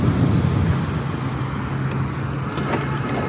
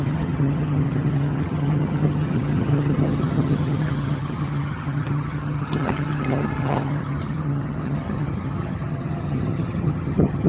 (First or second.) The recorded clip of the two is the first